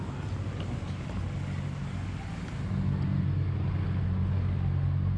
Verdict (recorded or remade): recorded